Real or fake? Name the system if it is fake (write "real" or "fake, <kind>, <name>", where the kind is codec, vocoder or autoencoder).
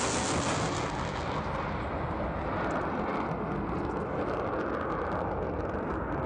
real